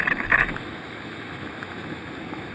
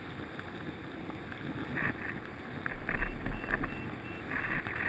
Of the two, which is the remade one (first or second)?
first